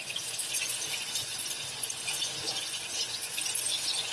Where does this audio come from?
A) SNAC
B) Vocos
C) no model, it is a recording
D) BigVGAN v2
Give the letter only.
B